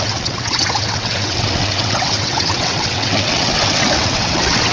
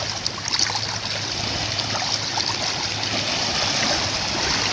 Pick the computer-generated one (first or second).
first